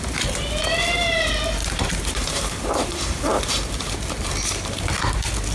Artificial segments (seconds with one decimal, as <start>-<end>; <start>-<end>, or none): 1.6-3.7